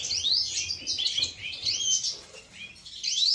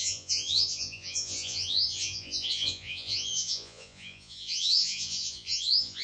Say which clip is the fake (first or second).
second